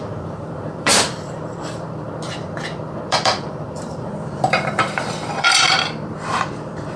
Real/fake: fake